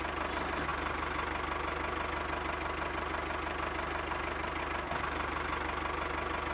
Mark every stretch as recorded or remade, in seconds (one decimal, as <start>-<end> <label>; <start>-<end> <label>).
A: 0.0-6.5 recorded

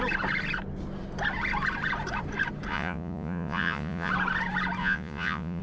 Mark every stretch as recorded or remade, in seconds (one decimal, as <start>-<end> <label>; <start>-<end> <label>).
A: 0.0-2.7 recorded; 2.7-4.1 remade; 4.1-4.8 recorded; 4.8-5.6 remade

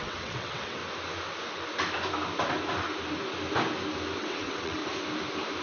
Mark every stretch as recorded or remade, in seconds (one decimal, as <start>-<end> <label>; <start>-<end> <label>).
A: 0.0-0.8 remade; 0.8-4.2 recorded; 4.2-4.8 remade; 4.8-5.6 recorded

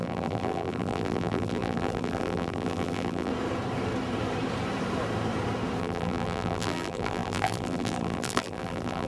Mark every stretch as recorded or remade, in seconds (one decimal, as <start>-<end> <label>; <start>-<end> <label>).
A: 0.0-3.3 remade; 3.3-5.8 recorded; 5.8-9.1 remade

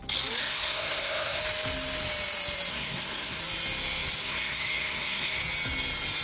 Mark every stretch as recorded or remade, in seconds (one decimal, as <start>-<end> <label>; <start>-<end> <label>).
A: 0.0-0.4 recorded; 0.4-1.4 remade; 1.4-2.7 recorded; 2.7-3.4 remade; 3.4-4.2 recorded; 4.2-5.4 remade; 5.4-6.2 recorded

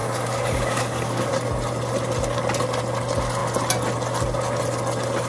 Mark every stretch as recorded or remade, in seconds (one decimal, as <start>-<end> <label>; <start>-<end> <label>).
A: 0.0-1.3 remade; 1.3-5.3 recorded

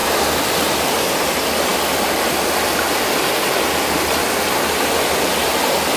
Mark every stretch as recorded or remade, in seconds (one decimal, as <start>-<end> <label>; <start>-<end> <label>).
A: 0.0-6.0 recorded

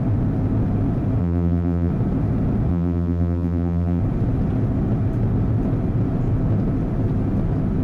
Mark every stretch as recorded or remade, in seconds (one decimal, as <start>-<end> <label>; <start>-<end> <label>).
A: 0.0-1.2 recorded; 1.2-1.9 remade; 1.9-2.7 recorded; 2.7-4.0 remade; 4.0-7.8 recorded